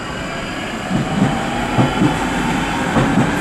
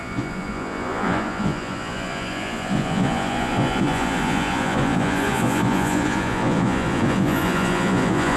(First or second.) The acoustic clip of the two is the first